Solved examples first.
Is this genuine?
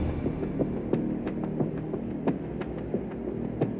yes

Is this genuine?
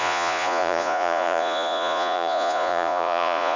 no